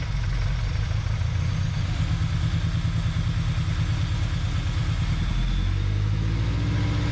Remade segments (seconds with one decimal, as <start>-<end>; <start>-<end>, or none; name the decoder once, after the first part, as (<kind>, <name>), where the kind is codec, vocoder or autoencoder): none